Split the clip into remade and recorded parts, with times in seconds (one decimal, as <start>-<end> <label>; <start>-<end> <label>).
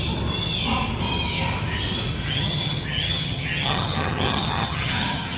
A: 0.0-2.2 recorded; 2.2-5.4 remade